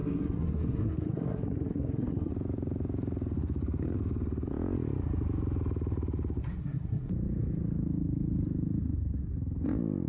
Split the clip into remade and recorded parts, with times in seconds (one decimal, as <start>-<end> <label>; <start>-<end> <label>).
0.0-2.3 remade; 2.3-6.5 recorded; 6.5-7.1 remade; 7.1-10.1 recorded